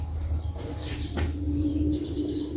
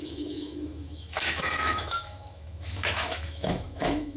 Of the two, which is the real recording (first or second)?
first